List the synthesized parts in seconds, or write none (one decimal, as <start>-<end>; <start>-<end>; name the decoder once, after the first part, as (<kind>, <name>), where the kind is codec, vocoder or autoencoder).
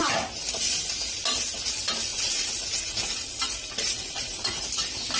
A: 2.1-4.7 (vocoder, Vocos)